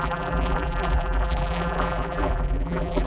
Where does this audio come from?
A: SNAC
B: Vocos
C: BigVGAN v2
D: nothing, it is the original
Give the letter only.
C